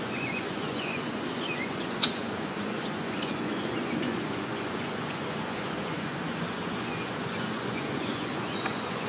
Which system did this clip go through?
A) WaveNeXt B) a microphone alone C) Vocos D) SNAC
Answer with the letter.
C